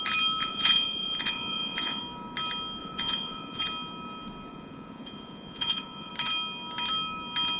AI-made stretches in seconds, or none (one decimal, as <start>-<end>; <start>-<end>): 0.4-2.0; 2.8-3.6; 4.5-6.1